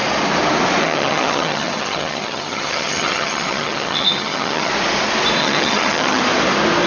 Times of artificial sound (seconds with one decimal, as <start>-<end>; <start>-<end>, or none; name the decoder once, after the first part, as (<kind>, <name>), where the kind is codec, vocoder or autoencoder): 0.8-4.7 (vocoder, HiFi-GAN); 5.4-6.2